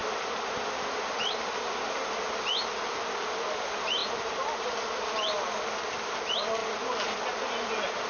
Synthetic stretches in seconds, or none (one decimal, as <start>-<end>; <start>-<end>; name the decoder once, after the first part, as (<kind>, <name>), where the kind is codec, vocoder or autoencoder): none